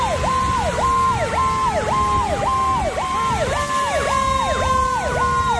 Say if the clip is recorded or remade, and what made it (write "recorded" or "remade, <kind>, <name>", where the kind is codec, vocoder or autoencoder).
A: recorded